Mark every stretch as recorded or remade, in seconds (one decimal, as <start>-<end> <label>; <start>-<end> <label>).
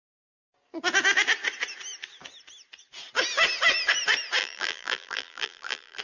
0.0-4.4 recorded; 4.4-6.0 remade